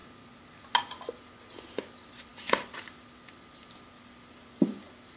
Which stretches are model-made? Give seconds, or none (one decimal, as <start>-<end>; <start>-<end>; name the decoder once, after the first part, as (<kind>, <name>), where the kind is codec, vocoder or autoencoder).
0.8-5.2 (vocoder, BigVGAN v2)